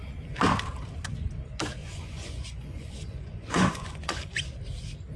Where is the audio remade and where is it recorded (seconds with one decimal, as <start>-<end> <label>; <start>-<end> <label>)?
0.0-1.8 recorded; 1.8-4.5 remade; 4.5-5.2 recorded